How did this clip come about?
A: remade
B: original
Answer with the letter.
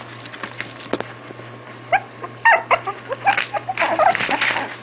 B